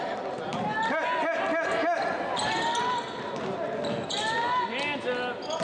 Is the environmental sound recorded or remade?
recorded